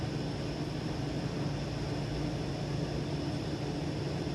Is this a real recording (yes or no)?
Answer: yes